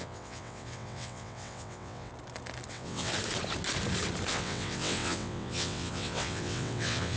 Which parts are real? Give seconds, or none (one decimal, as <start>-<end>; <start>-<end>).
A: 2.1-2.7; 3.1-4.3